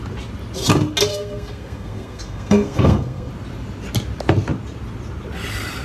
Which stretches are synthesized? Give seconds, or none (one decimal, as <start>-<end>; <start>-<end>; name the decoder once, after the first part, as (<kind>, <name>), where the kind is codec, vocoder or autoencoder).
1.1-3.3 (codec, SNAC)